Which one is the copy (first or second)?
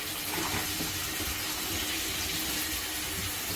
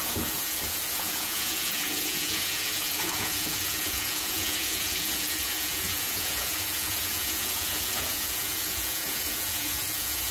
second